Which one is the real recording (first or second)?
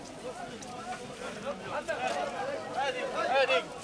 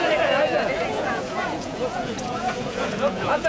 first